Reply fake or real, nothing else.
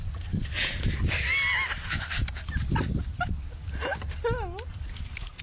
real